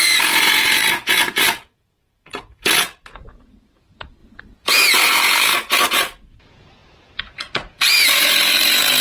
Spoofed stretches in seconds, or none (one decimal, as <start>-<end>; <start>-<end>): 0.0-9.0